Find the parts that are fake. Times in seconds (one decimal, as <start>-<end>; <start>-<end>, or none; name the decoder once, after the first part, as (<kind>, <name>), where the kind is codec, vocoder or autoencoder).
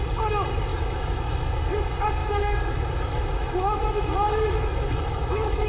0.7-1.5 (autoencoder, DAC-VAE); 2.2-5.7